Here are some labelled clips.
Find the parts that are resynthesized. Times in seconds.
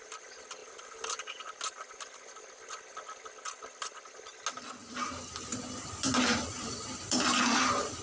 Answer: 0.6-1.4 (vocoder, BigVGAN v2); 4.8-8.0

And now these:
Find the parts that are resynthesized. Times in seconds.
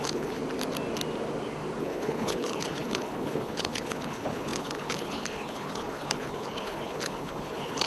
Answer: 0.0-0.4 (codec, HILCodec); 1.8-7.9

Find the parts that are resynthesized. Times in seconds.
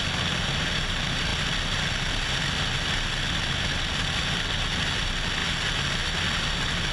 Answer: none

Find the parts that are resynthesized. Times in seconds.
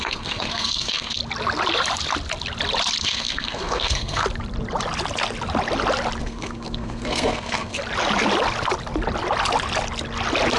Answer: 0.0-1.2 (codec, SNAC); 3.0-4.2; 6.2-7.8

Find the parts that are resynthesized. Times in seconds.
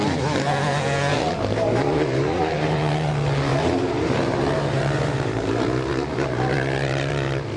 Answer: 1.1-3.1 (vocoder, BigVGAN v2); 3.5-7.1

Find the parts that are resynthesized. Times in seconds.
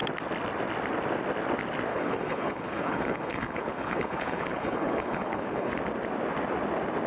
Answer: 1.9-5.7 (codec, HILCodec)